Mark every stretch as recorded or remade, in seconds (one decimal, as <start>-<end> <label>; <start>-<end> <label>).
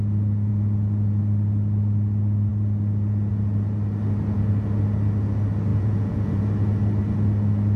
0.0-0.5 recorded; 0.5-1.2 remade; 1.2-5.7 recorded; 5.7-6.4 remade; 6.4-7.8 recorded